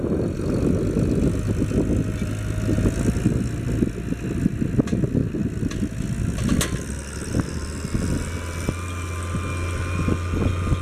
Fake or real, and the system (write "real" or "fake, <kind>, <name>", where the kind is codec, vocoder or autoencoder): real